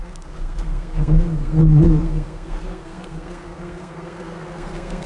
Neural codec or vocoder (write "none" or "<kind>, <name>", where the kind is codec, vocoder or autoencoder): codec, SNAC